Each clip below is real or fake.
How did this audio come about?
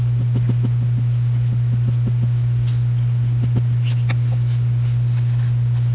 real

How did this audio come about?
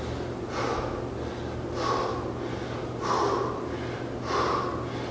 real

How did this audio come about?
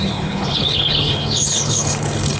fake